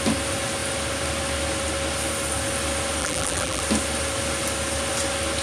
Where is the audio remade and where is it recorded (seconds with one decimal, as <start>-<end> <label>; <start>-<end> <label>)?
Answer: 0.0-3.0 recorded; 3.0-3.6 remade; 3.6-5.4 recorded